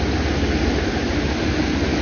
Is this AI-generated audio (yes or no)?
no